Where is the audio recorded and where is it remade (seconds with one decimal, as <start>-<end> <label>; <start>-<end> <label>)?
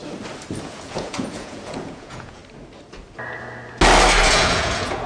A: 0.0-0.6 recorded; 0.6-2.4 remade; 2.4-4.2 recorded; 4.2-5.1 remade